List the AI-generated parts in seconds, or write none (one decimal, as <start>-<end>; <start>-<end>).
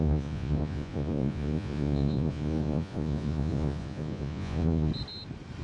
0.0-4.9